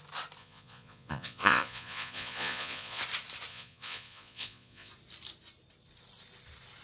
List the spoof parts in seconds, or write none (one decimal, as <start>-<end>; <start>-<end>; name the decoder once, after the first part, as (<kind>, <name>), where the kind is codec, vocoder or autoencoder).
0.4-3.0 (vocoder, Vocos); 3.5-4.9